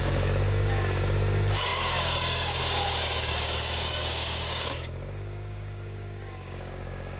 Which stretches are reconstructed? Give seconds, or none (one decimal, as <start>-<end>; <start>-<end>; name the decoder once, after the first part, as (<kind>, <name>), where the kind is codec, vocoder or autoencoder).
0.0-7.2 (codec, DAC)

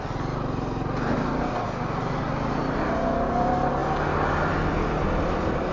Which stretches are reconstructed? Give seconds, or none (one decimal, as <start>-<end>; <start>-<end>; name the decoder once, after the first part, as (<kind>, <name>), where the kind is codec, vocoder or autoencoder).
none

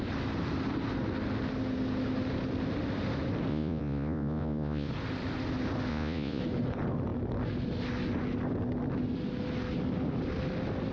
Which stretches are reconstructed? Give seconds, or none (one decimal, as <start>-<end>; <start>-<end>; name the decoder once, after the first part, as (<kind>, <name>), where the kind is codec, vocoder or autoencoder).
3.5-4.9 (vocoder, Vocos); 5.9-6.4

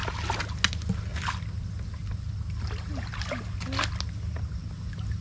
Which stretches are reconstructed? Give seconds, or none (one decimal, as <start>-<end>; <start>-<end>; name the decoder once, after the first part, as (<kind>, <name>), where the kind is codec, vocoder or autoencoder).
1.1-2.3 (vocoder, BigVGAN v2)

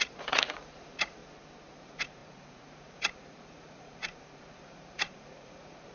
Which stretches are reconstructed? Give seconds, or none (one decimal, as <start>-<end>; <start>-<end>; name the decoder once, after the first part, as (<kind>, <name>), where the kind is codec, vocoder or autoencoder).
0.0-1.2 (vocoder, Vocos); 1.7-5.9